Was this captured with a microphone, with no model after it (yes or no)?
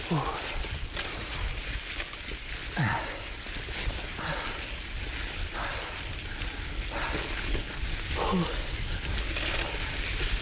yes